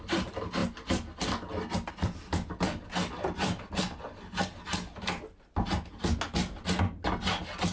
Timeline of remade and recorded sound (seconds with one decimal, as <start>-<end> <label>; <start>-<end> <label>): 0.0-7.7 recorded